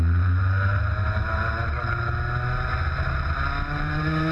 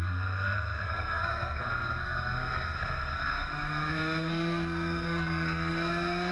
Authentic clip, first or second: first